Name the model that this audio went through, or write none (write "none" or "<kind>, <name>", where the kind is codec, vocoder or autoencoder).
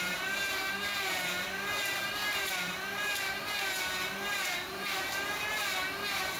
vocoder, BigVGAN v2